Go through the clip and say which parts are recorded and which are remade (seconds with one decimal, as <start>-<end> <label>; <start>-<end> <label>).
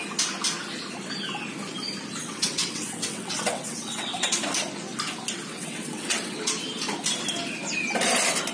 0.0-2.2 recorded; 2.2-4.4 remade; 4.4-5.5 recorded; 5.5-6.5 remade; 6.5-8.5 recorded